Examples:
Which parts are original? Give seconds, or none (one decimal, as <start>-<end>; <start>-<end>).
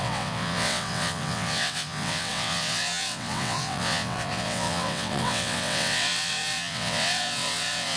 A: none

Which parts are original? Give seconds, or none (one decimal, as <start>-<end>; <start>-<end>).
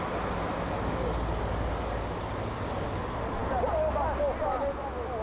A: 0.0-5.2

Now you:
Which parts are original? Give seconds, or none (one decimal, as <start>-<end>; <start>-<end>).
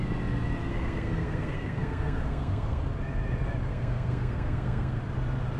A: 0.0-0.7; 2.8-3.7; 5.0-5.6